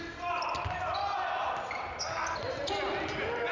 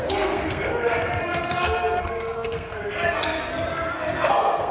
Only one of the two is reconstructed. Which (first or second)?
second